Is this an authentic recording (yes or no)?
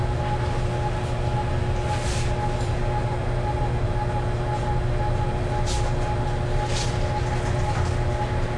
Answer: yes